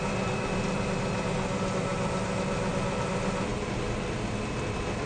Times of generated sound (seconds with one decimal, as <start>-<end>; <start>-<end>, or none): none